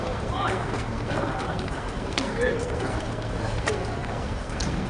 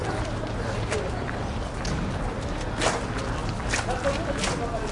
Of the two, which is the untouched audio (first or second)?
second